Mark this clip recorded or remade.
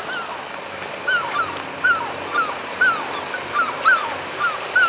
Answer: recorded